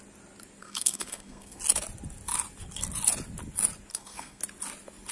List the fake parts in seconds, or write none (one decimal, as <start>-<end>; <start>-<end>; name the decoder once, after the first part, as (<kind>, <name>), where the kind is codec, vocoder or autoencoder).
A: 0.6-1.6 (codec, SNAC); 3.9-4.4